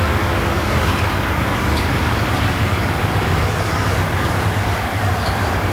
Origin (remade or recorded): remade